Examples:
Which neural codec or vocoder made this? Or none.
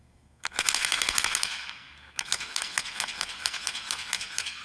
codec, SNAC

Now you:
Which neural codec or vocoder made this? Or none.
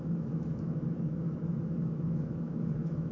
autoencoder, DAC-VAE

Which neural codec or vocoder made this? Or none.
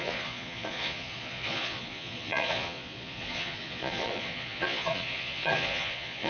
vocoder, Vocos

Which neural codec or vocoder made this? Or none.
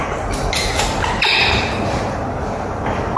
none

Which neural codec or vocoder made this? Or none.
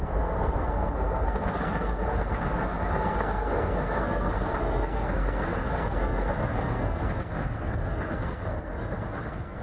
codec, SNAC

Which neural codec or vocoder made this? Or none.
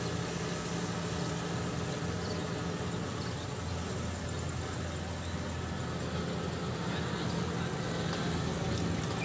none